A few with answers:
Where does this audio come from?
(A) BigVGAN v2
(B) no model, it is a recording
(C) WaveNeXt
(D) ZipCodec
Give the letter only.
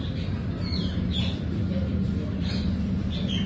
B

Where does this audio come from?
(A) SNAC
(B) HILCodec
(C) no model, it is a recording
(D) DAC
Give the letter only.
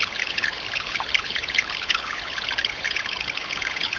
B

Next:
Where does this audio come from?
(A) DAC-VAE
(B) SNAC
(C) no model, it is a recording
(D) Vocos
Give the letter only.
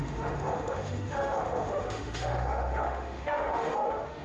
A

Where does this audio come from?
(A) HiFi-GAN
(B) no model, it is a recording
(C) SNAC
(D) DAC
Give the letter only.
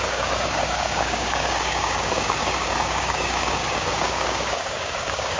D